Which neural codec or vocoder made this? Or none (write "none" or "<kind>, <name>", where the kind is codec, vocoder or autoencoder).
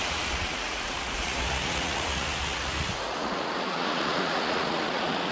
vocoder, Vocos